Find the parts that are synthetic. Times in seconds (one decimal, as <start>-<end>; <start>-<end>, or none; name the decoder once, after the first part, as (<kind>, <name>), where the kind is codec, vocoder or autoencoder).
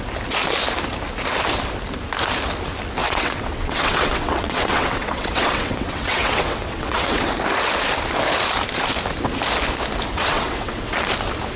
3.0-7.3 (vocoder, WaveNeXt); 10.1-10.9